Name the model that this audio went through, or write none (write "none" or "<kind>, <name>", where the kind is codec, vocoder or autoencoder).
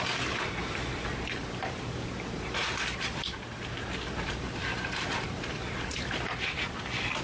none